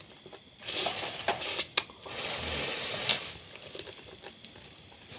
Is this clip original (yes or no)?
yes